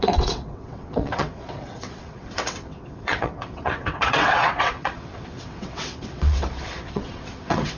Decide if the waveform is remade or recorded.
remade